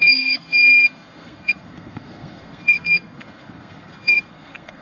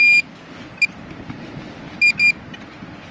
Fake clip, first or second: first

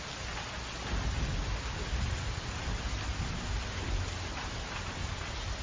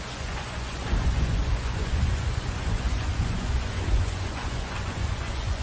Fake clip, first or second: second